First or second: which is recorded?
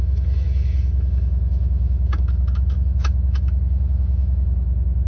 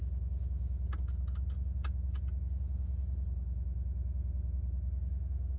second